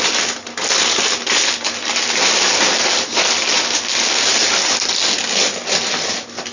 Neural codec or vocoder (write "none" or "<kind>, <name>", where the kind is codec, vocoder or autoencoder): none